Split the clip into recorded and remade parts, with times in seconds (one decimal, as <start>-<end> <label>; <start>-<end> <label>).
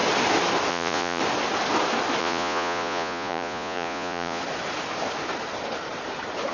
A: 0.0-0.7 recorded; 0.7-1.2 remade; 1.2-2.2 recorded; 2.2-4.4 remade; 4.4-6.5 recorded